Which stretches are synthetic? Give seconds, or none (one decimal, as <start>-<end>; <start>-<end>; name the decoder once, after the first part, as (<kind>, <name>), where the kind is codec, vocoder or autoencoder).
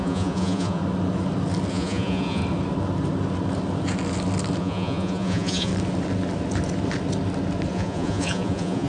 0.0-0.8 (vocoder, Vocos); 1.7-2.4; 4.6-5.7; 7.7-8.9